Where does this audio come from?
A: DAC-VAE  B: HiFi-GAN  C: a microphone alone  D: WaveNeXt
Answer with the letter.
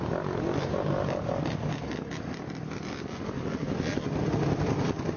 C